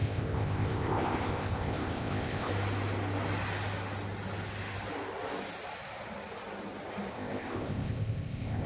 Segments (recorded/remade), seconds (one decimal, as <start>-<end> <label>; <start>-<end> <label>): 0.0-2.5 remade; 2.5-7.1 recorded; 7.1-8.7 remade